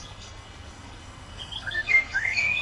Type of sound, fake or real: fake